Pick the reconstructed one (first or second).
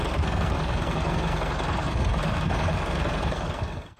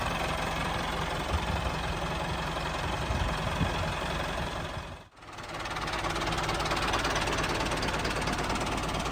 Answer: first